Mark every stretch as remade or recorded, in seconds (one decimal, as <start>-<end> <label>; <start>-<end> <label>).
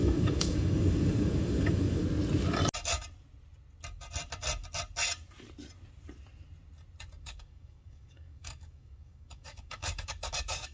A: 0.0-2.0 remade; 2.0-7.2 recorded; 7.2-10.7 remade